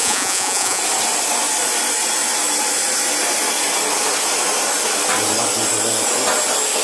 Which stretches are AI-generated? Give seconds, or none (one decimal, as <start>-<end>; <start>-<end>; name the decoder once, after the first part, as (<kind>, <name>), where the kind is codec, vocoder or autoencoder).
0.0-0.8 (vocoder, Vocos)